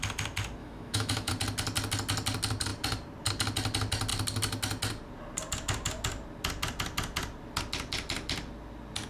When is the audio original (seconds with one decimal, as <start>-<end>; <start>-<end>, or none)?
0.0-0.6; 1.3-9.1